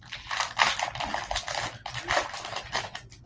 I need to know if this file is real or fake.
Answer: real